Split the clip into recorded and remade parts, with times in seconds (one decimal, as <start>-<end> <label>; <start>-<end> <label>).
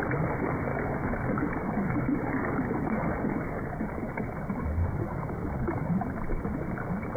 0.0-0.7 recorded; 0.7-4.1 remade; 4.1-4.8 recorded; 4.8-5.9 remade; 5.9-7.2 recorded